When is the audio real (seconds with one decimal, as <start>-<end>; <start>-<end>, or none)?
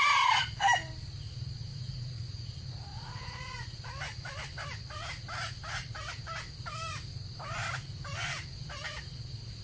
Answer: 0.0-1.7; 2.5-2.9; 3.9-9.6